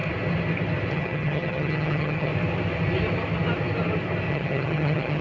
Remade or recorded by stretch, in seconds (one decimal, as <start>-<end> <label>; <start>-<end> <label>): 0.0-0.9 recorded; 0.9-2.3 remade; 2.3-4.3 recorded; 4.3-5.2 remade

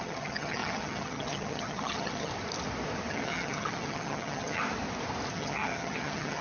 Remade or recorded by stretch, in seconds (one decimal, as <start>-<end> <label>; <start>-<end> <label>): 0.0-2.3 remade; 2.3-3.1 recorded; 3.1-4.6 remade; 4.6-5.3 recorded; 5.3-6.4 remade

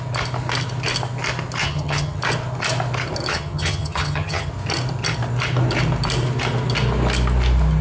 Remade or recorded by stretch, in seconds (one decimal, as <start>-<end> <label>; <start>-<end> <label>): 0.0-1.6 recorded; 1.6-2.2 remade; 2.2-3.3 recorded; 3.3-4.5 remade; 4.5-7.8 recorded

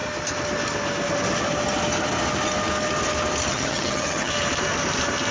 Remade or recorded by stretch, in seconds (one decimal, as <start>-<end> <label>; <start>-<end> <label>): 0.0-3.5 recorded; 3.5-4.3 remade; 4.3-5.3 recorded

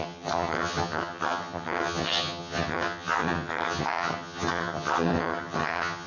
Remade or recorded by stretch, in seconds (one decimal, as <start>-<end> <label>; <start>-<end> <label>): 0.0-6.1 remade

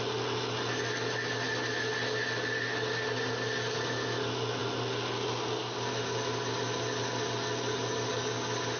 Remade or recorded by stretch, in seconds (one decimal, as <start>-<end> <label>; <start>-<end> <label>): 0.0-8.8 recorded

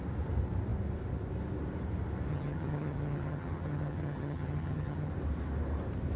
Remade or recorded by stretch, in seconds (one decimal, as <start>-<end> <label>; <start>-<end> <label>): 0.0-2.3 recorded; 2.3-5.1 remade; 5.1-6.2 recorded